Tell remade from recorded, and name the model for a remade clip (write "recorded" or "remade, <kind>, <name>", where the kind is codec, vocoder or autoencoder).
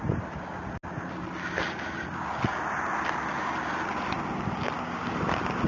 recorded